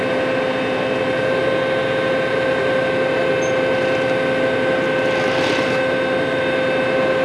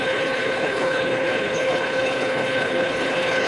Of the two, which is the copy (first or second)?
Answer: second